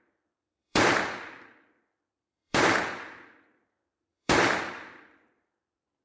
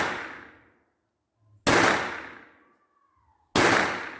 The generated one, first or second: first